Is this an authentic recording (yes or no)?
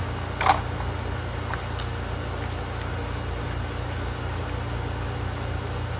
yes